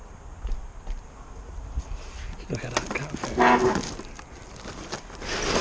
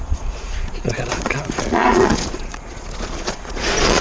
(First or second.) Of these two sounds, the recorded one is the first